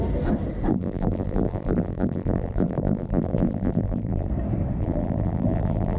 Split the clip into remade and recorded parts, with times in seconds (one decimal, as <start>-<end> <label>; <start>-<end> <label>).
0.0-0.7 recorded; 0.7-4.3 remade; 4.3-4.8 recorded; 4.8-6.0 remade